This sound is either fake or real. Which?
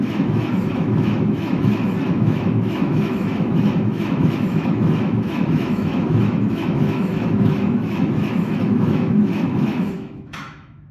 fake